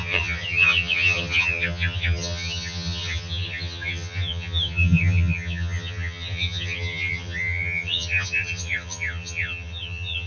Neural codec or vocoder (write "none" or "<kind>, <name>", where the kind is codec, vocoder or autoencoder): vocoder, HiFi-GAN